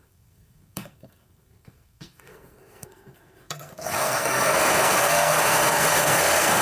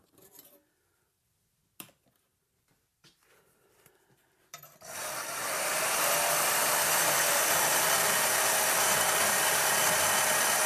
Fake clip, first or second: first